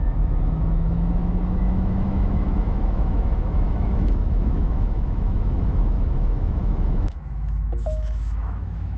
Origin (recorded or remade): remade